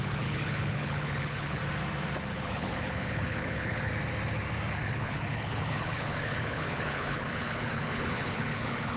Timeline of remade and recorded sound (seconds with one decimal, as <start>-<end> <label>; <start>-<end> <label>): 0.0-1.6 remade; 1.6-2.3 recorded; 2.3-3.9 remade; 3.9-4.7 recorded; 4.7-9.0 remade